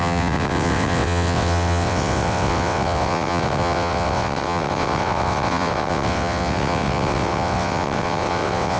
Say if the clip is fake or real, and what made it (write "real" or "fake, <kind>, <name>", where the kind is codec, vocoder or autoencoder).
fake, vocoder, WaveNeXt